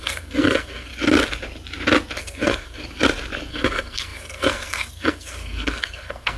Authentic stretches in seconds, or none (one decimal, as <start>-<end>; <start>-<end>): 0.9-2.2; 2.8-3.5

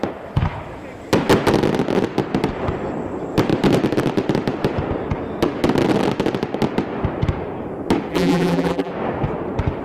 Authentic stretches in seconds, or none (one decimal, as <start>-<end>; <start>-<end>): 0.0-8.1; 8.9-9.8

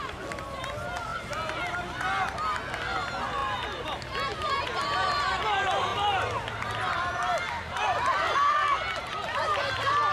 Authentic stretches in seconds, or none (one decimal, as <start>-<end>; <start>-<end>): 0.0-10.1

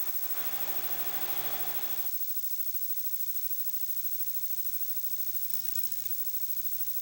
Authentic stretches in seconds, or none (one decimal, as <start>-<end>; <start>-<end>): 0.0-5.5; 6.1-7.0

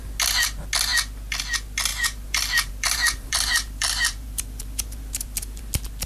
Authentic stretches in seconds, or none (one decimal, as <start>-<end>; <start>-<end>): 0.0-1.9; 5.6-6.1

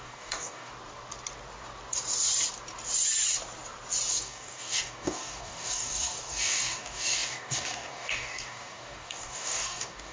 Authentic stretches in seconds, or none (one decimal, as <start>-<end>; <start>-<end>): 0.7-4.1